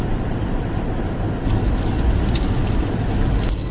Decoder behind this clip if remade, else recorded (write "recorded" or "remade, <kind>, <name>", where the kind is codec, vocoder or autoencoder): recorded